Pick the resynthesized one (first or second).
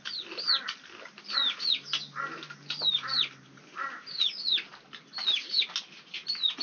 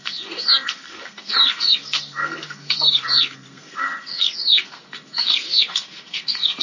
second